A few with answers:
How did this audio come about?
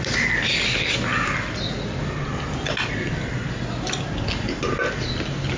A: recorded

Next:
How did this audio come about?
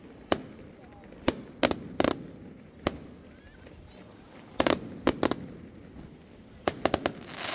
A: recorded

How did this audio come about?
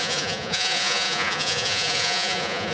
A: remade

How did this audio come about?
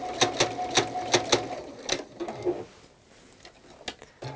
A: recorded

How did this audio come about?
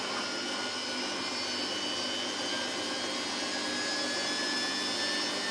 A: recorded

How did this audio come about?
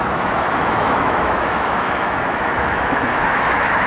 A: remade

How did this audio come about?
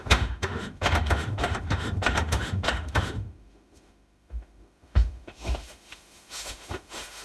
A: remade